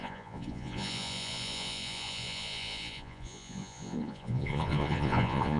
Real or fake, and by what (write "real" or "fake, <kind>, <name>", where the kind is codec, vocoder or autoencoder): fake, vocoder, Vocos